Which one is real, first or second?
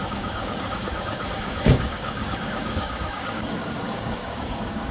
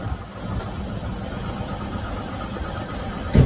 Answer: second